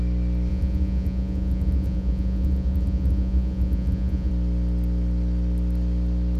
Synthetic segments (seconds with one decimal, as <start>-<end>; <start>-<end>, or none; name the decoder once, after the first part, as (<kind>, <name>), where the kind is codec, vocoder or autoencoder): 0.5-4.3 (vocoder, Vocos)